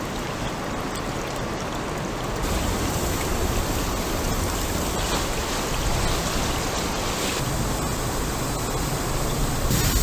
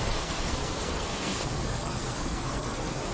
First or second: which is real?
first